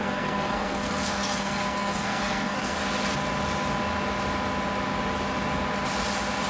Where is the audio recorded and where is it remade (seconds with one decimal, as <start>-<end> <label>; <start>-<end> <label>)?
0.0-2.8 remade; 2.8-6.5 recorded